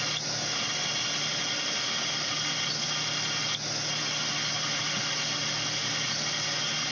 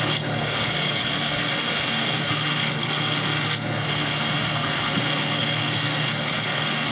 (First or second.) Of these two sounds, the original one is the first